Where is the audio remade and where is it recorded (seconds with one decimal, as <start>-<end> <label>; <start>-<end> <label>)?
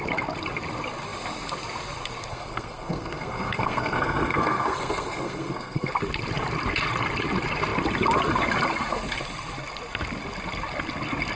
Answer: 0.0-2.3 recorded; 2.3-5.9 remade; 5.9-11.4 recorded